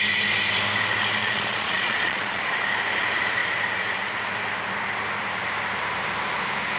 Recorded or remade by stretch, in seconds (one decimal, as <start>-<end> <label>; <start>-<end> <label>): 0.0-1.2 recorded; 1.2-2.6 remade; 2.6-6.8 recorded